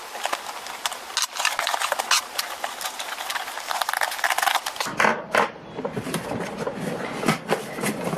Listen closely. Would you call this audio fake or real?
real